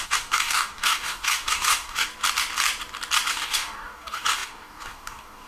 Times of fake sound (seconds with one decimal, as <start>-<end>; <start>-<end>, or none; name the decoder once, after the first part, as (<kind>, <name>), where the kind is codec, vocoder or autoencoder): 0.0-2.1 (codec, DAC); 3.3-5.5